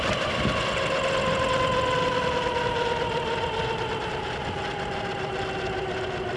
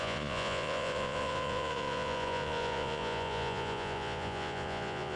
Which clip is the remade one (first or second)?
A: second